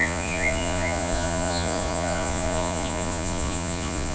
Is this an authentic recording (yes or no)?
no